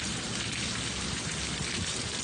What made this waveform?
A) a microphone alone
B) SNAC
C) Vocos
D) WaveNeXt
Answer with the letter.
A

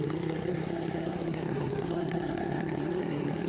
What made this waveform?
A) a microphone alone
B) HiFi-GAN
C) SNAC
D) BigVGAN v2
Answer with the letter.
C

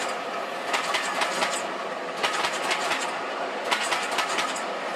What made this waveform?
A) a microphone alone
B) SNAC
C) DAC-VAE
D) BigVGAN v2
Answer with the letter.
A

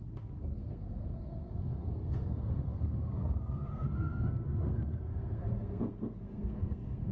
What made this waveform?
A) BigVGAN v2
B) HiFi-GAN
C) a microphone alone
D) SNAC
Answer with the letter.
D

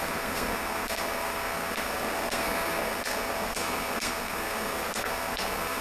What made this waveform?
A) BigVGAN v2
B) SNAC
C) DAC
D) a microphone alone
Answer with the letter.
B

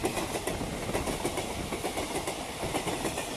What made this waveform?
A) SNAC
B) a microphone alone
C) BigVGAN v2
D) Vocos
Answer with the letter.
B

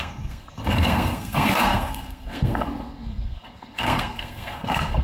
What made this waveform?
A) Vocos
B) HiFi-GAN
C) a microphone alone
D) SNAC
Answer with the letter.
D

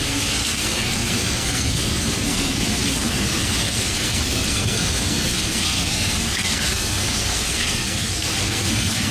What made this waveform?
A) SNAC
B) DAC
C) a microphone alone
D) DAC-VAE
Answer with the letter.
A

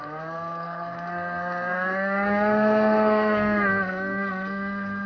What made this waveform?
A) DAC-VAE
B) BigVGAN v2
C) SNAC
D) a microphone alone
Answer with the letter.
C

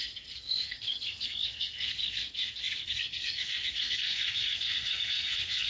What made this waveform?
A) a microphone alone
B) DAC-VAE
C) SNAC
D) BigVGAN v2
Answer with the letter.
C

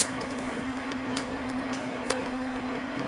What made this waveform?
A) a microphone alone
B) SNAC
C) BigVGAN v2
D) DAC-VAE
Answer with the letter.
B